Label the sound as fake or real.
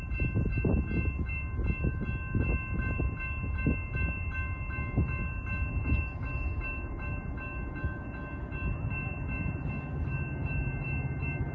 real